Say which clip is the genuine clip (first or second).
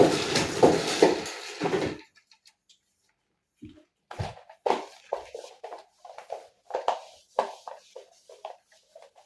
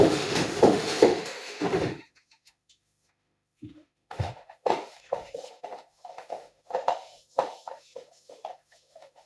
first